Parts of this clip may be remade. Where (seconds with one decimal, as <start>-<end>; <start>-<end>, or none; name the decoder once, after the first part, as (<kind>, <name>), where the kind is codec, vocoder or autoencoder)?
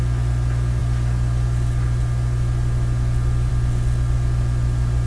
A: none